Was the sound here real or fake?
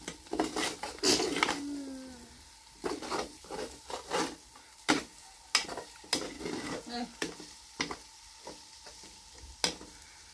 real